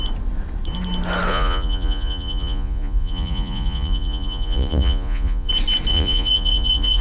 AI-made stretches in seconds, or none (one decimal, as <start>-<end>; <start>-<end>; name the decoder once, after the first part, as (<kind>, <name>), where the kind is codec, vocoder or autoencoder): 1.3-5.5 (vocoder, Vocos); 5.9-7.0